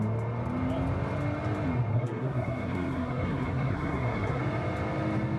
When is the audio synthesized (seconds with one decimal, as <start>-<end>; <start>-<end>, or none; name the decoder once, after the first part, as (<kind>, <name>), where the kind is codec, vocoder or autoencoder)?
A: 1.9-4.4 (codec, SNAC)